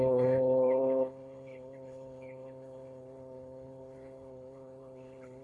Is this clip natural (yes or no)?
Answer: no